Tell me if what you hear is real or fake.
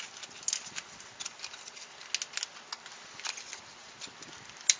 real